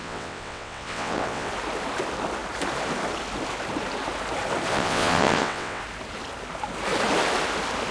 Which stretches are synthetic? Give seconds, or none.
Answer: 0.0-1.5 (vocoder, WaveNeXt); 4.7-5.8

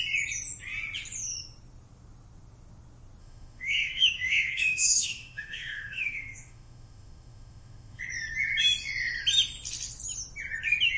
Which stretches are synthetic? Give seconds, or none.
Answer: 3.2-8.0 (autoencoder, DAC-VAE)

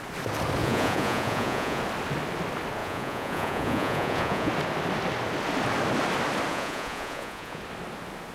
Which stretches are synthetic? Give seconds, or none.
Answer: 0.6-1.8 (vocoder, Vocos); 2.8-4.5; 6.5-7.6

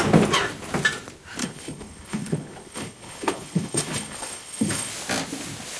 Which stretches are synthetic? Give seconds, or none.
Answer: 1.4-4.9 (codec, HILCodec)

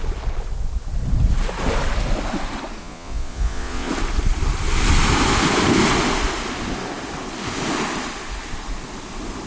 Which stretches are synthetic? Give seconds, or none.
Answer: 2.8-3.9 (vocoder, Vocos)